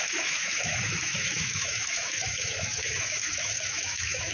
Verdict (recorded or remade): remade